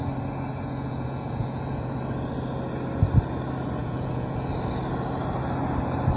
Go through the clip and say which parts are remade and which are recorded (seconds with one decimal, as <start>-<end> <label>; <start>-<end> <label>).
0.0-0.5 recorded; 0.5-2.0 remade; 2.0-3.8 recorded; 3.8-4.5 remade; 4.5-6.2 recorded